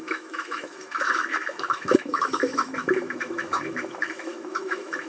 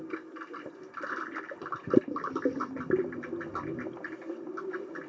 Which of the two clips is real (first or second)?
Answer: second